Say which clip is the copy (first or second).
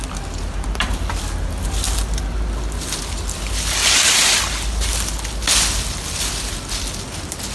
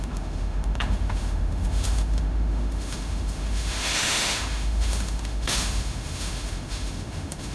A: second